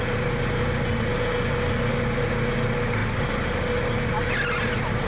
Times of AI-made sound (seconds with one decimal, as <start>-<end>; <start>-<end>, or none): none